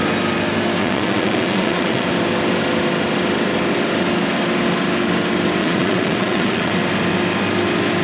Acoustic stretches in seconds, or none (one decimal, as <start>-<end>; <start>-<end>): 0.0-0.8; 2.1-5.6; 6.7-8.0